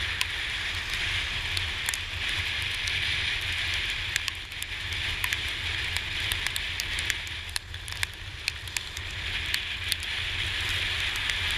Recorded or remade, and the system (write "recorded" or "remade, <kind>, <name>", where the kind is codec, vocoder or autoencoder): recorded